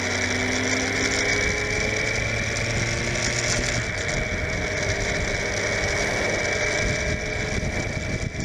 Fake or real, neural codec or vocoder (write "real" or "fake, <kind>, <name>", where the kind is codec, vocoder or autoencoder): real